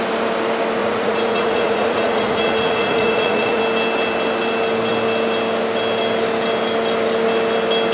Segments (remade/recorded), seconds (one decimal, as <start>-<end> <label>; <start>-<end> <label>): 0.0-0.8 recorded; 0.8-3.6 remade; 3.6-7.9 recorded